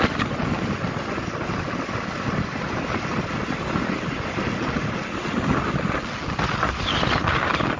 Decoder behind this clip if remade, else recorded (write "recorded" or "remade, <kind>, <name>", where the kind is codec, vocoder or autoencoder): recorded